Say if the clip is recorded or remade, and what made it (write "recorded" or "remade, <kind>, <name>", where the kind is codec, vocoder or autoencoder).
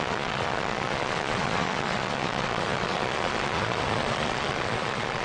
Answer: remade, vocoder, Vocos